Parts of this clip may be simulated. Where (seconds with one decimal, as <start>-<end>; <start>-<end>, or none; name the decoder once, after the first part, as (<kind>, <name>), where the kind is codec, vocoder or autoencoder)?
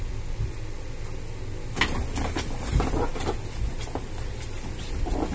none